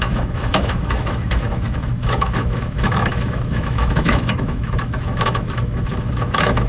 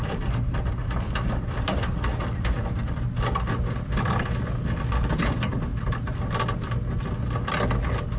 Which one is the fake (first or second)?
first